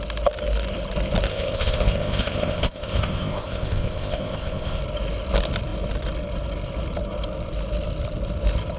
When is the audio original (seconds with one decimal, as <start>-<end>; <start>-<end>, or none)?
0.0-1.3; 4.8-8.8